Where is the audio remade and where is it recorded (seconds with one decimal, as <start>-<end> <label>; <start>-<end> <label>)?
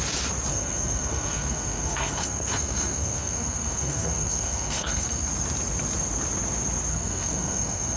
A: 0.0-0.5 recorded; 0.5-5.3 remade; 5.3-6.9 recorded; 6.9-8.0 remade